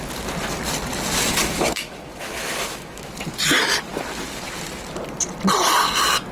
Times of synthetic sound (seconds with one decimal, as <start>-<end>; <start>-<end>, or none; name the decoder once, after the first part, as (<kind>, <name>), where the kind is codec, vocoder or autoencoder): 1.4-3.1 (autoencoder, DAC-VAE)